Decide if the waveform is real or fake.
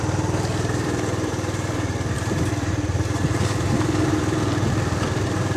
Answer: fake